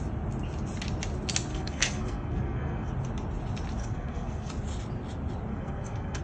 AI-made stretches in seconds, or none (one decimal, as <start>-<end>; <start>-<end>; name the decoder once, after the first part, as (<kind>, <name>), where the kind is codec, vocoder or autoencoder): 1.5-2.9 (codec, SNAC); 3.8-4.5; 5.5-6.2